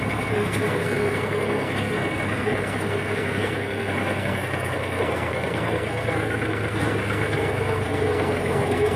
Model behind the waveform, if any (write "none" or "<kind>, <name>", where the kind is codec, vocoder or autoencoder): codec, SNAC